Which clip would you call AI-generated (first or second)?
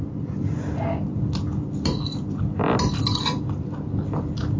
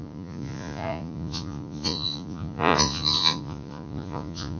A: second